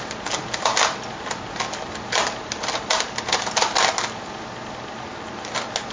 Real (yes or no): yes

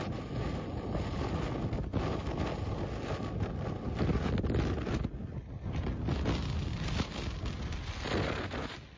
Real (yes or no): yes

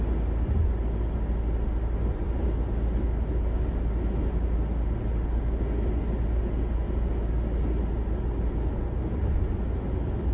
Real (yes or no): yes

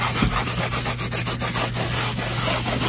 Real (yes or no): yes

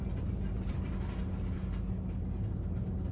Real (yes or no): yes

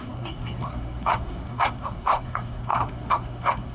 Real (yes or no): no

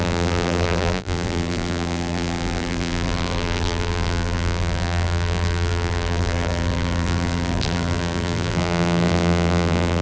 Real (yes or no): no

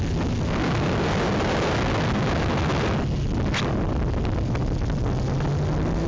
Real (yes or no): yes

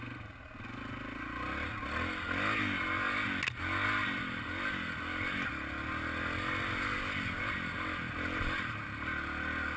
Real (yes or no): yes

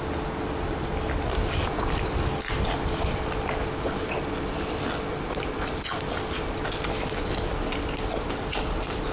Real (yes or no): yes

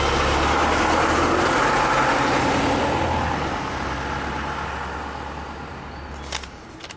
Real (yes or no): yes